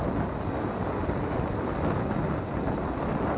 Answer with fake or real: real